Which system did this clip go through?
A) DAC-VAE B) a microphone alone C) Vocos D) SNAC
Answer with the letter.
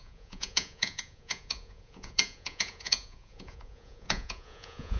C